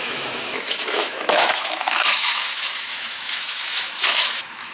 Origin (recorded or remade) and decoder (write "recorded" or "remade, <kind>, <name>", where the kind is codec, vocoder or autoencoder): remade, autoencoder, DAC-VAE